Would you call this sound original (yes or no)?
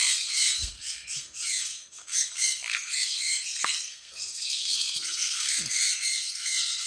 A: no